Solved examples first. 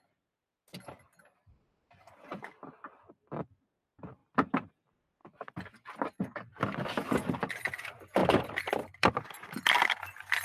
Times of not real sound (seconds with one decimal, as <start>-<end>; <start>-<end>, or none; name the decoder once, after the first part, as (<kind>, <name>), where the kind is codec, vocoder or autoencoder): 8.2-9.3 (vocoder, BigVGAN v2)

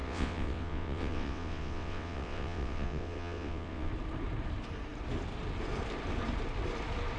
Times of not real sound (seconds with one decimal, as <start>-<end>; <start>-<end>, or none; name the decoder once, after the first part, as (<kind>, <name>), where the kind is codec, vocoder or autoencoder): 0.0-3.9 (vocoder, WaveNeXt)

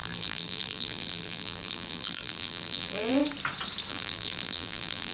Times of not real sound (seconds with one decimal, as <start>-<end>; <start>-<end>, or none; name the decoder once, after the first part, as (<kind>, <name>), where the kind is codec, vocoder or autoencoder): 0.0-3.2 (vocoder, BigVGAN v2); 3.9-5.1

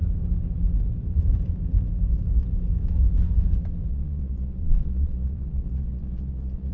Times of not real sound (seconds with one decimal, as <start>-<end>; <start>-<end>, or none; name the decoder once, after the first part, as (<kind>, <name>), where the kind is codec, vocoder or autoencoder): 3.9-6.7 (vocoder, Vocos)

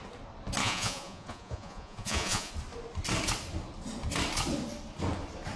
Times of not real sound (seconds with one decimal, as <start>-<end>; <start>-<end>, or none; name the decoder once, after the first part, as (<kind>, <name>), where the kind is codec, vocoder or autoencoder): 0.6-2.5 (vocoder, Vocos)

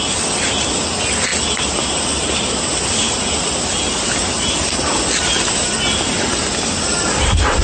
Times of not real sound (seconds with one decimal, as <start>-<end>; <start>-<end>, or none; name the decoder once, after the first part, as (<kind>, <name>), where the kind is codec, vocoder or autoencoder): none